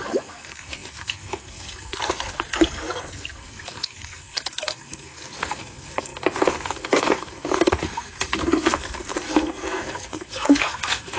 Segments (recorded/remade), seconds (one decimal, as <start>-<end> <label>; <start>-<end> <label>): 0.0-11.2 remade